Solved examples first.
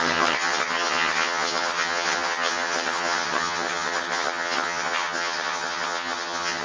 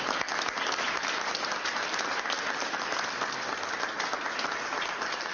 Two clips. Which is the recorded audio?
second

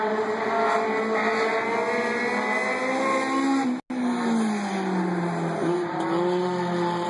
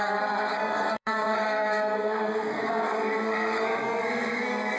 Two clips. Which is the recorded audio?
first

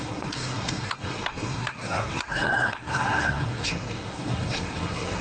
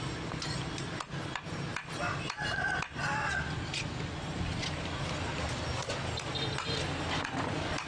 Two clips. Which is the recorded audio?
second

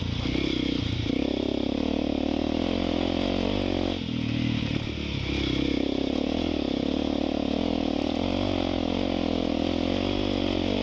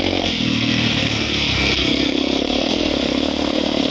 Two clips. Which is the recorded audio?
first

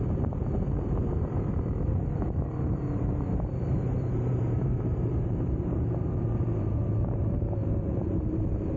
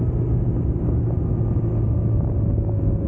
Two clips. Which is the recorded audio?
second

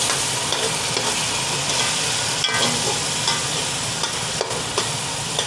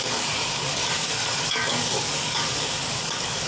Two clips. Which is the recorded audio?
first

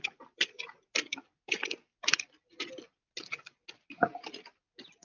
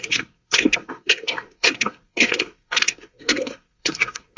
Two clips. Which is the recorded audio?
first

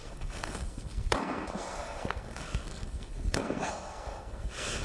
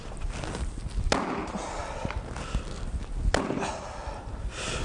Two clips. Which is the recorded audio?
second